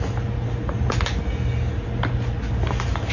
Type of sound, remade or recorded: recorded